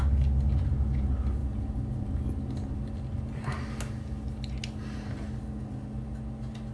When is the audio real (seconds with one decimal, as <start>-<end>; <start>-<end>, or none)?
0.0-6.7